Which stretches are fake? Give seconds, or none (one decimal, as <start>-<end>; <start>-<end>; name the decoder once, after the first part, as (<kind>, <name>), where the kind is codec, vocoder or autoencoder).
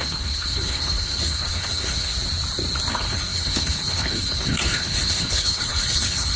0.0-2.1 (codec, HILCodec); 2.9-6.4